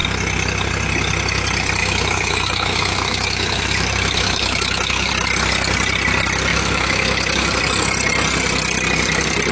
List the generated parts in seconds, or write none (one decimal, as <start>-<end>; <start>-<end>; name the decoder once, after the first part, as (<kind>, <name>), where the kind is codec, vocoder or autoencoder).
1.8-5.1 (autoencoder, DAC-VAE); 6.5-7.6